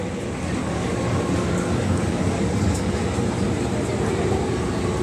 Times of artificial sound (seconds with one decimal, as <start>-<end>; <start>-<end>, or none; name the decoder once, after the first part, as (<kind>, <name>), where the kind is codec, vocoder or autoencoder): 0.6-3.0 (codec, DAC)